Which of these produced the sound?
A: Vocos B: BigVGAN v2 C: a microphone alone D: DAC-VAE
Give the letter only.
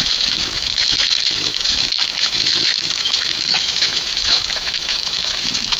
D